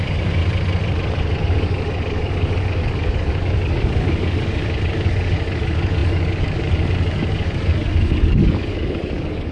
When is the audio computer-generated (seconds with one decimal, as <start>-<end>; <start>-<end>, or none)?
0.0-0.4; 1.4-9.5